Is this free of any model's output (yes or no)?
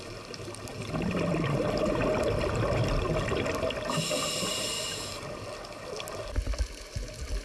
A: yes